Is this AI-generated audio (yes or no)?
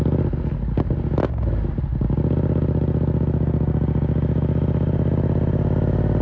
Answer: no